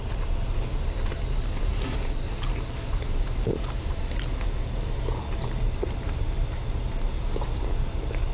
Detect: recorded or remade recorded